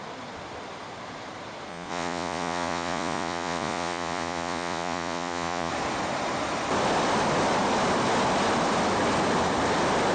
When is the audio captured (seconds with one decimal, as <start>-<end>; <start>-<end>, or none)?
0.0-1.7; 5.7-10.1